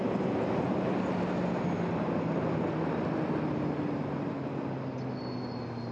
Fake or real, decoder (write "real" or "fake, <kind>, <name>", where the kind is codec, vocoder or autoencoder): real